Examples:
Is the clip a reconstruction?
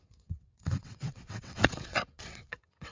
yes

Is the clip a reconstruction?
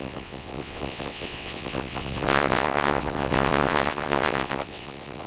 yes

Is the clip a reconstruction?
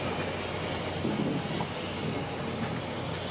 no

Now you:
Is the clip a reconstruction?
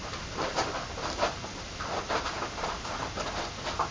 no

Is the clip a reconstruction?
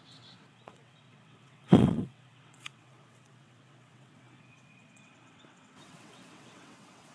yes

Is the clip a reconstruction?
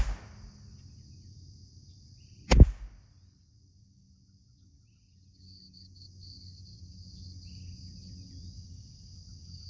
no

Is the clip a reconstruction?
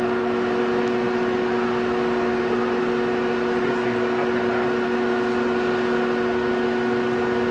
no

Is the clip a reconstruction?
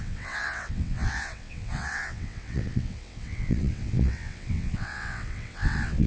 yes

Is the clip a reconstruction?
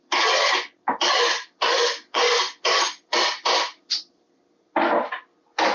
no